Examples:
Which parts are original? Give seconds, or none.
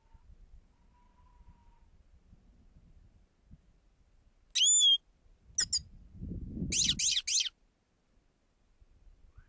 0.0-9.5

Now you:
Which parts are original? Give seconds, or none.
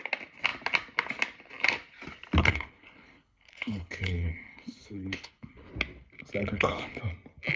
0.0-2.4; 5.7-6.4; 7.0-7.6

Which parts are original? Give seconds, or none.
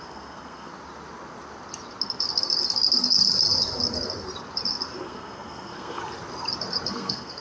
0.7-5.0; 6.0-6.9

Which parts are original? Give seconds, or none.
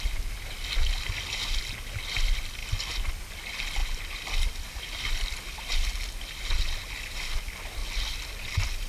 0.0-8.9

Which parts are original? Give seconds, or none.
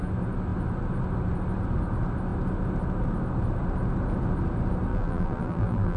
0.0-4.9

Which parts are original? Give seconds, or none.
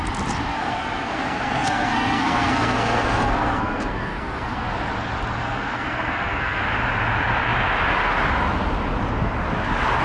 0.0-0.5; 4.7-5.4; 6.6-10.0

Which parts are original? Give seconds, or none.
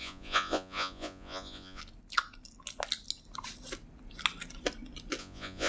1.8-5.2